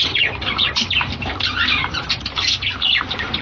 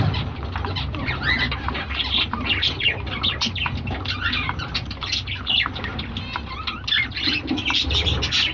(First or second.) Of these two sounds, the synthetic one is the first